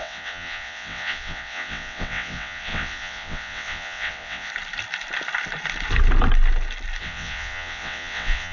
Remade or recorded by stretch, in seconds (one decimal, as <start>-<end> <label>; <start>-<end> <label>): 0.0-4.5 remade; 4.5-7.0 recorded; 7.0-8.5 remade